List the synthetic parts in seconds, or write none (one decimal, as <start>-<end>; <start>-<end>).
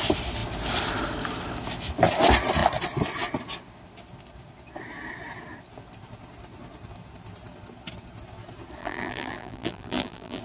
8.8-10.4